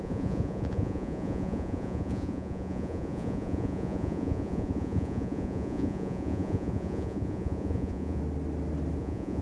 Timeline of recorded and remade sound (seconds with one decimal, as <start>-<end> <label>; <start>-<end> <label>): 0.0-8.2 remade; 8.2-9.0 recorded; 9.0-9.4 remade